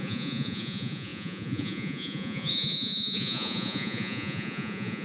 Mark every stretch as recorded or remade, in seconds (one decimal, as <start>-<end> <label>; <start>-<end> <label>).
0.0-5.0 remade